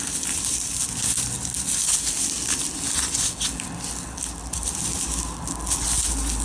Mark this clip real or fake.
real